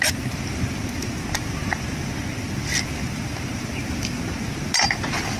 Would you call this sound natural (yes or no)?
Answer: yes